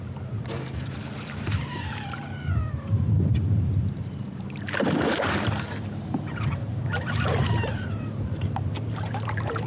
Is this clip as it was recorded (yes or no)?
no